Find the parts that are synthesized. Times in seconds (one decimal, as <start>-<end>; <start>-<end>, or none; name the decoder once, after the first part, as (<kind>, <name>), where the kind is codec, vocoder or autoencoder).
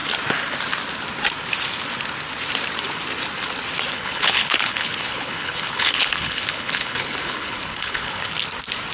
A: 3.9-8.3 (codec, HILCodec)